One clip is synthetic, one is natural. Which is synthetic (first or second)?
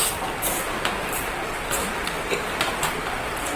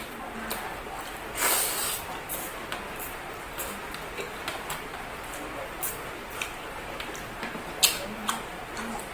first